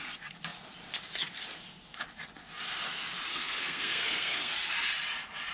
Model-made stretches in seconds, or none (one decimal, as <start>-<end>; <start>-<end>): 3.3-4.5